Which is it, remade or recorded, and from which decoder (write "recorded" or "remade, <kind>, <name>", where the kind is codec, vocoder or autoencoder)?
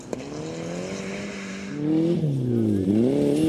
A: recorded